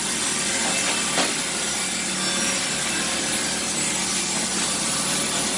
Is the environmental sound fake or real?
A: real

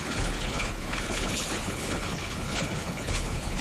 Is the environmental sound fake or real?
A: fake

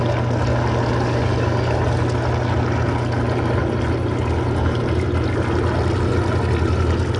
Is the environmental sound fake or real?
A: real